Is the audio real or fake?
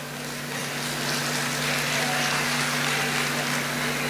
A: real